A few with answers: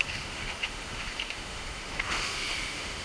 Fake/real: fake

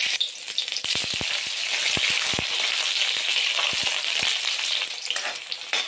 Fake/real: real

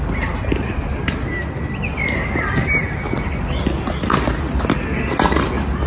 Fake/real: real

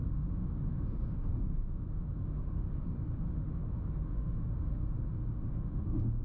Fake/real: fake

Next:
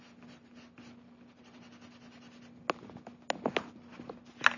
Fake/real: real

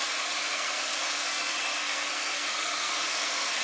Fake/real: fake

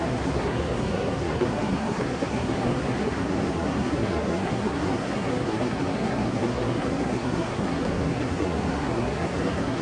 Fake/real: fake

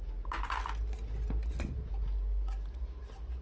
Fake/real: real